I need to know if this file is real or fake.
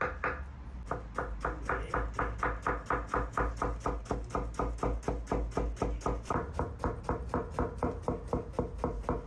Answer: real